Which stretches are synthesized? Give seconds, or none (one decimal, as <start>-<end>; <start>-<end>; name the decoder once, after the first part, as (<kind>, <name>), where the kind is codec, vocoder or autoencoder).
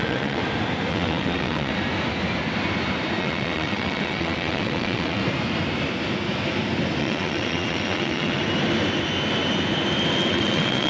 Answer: 0.0-0.4 (vocoder, WaveNeXt); 0.9-1.7; 3.2-5.2; 7.0-8.4; 10.3-10.9